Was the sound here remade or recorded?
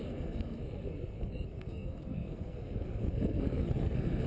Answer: remade